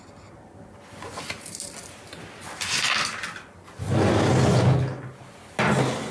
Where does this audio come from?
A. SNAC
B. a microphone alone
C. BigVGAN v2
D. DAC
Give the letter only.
B